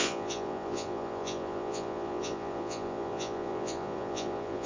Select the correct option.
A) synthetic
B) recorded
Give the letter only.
A